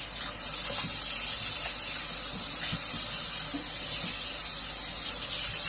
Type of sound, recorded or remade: recorded